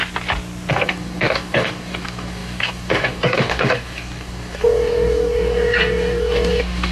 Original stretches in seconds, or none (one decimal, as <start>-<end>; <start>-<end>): 0.0-0.7